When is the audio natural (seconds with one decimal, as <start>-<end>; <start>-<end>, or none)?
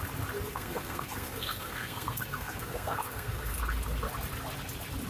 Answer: 0.0-0.5; 3.6-5.1